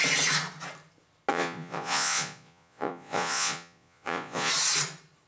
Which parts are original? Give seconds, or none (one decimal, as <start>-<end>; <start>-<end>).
0.0-1.3; 4.5-5.3